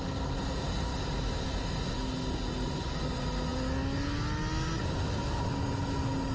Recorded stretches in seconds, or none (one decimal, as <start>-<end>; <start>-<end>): 0.0-6.3